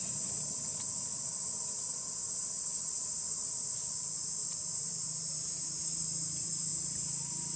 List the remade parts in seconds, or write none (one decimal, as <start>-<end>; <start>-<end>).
4.4-5.8; 6.7-7.6